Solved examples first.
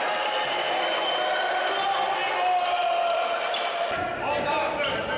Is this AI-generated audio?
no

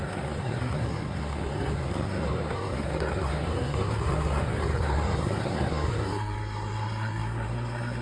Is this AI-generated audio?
yes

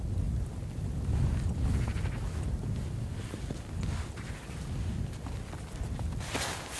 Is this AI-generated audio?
no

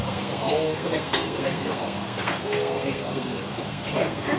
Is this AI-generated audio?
yes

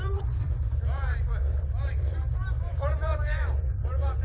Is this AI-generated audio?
yes